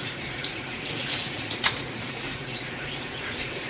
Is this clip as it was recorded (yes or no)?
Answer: no